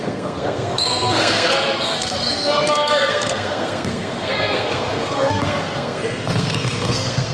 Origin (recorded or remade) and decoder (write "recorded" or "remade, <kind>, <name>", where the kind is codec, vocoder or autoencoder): remade, codec, SNAC